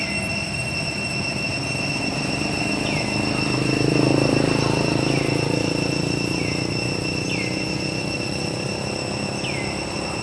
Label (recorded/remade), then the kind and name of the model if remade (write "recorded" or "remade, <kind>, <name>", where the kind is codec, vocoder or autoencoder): recorded